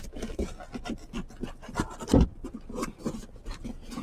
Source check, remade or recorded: recorded